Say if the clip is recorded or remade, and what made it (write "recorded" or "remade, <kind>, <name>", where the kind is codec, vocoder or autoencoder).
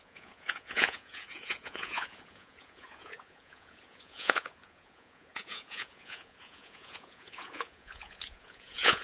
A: remade, vocoder, Vocos